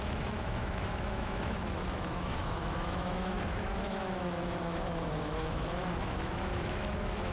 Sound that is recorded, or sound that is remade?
remade